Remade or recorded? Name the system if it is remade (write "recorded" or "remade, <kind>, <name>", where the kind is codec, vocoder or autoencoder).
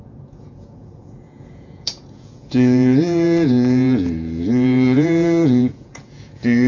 remade, vocoder, Vocos